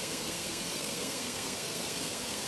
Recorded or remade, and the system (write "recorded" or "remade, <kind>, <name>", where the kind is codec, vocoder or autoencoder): remade, codec, SNAC